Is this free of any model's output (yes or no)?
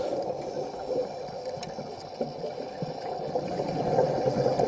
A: yes